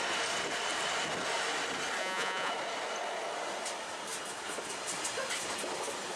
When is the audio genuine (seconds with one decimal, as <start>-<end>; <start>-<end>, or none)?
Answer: 0.0-2.0; 2.5-6.2